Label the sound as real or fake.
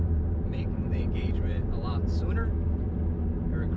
fake